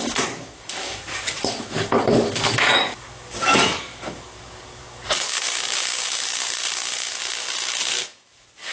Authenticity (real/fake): fake